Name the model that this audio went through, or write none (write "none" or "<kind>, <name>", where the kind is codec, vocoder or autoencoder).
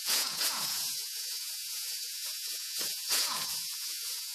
vocoder, Vocos